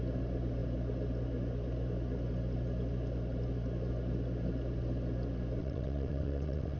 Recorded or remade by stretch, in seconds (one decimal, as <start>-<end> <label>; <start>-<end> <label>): 0.0-5.6 recorded; 5.6-6.8 remade